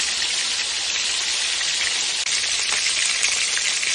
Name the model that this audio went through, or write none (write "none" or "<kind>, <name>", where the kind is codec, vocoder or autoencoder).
none